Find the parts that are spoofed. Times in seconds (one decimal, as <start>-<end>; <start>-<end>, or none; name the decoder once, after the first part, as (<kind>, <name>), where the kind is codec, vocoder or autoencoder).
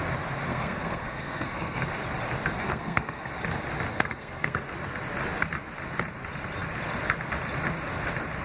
0.5-1.9 (codec, SNAC); 2.6-3.3; 3.9-4.6